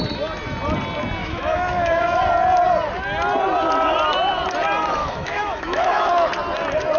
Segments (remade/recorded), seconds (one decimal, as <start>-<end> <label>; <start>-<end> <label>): 0.0-1.2 recorded; 1.2-2.2 remade; 2.2-5.0 recorded; 5.0-6.3 remade; 6.3-7.0 recorded